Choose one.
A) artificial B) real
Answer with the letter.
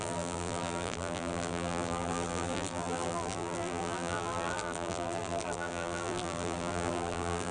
A